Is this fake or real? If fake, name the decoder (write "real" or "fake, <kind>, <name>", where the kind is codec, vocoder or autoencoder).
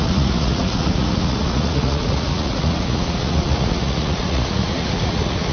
fake, vocoder, Vocos